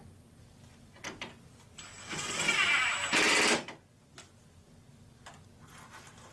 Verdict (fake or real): real